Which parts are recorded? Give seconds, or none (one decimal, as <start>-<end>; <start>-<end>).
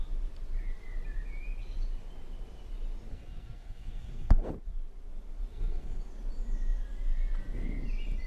0.0-3.1; 4.5-5.5; 6.0-8.3